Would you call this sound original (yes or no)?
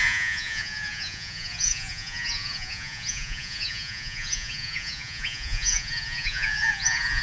no